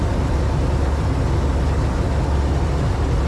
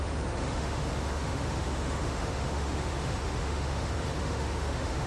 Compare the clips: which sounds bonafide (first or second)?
first